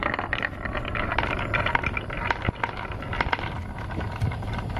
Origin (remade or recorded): recorded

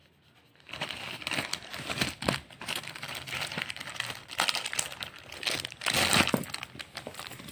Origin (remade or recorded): recorded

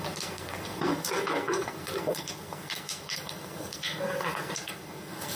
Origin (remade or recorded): remade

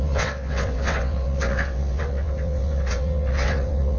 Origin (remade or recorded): remade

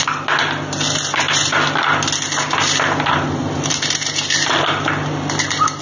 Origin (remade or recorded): recorded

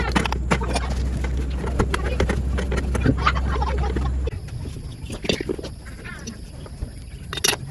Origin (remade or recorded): recorded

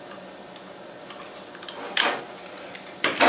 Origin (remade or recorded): recorded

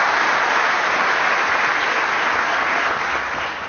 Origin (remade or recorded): recorded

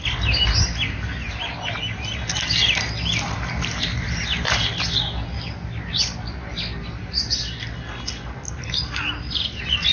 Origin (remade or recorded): recorded